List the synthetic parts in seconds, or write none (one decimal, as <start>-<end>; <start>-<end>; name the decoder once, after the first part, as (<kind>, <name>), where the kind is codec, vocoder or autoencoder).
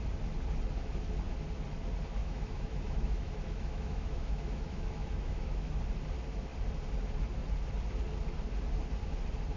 2.2-5.8 (autoencoder, DAC-VAE)